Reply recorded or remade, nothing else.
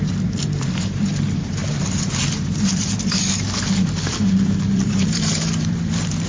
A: remade